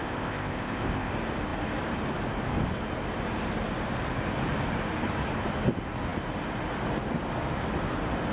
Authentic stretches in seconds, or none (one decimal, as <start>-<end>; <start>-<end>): 1.1-8.3

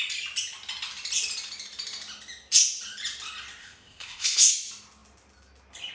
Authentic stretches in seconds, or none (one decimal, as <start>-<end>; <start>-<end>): 0.0-3.6; 4.5-5.9

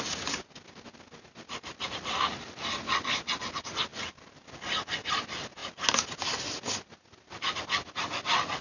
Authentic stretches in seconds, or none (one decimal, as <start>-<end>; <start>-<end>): 0.0-8.6

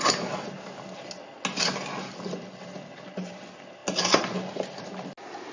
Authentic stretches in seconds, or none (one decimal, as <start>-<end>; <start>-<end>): 0.0-5.5

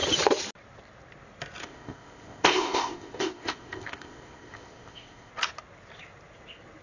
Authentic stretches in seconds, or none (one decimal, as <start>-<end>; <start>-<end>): 0.0-1.6; 5.3-6.8

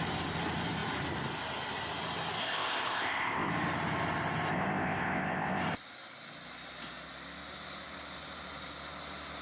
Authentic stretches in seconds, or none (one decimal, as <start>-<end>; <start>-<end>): 0.0-2.4; 3.5-4.5; 5.6-9.4

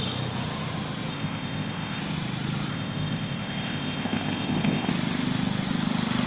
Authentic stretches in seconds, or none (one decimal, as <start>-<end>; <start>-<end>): 0.0-1.1; 2.0-2.7; 4.9-6.3

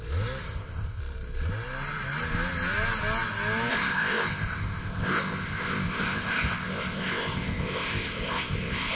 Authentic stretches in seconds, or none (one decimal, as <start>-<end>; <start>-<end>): 0.0-0.4; 1.0-3.7